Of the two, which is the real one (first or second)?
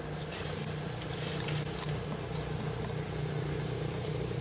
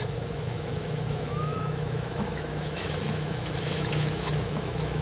first